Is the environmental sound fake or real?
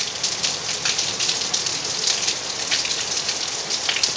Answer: real